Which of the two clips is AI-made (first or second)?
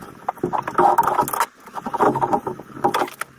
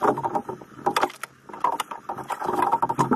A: second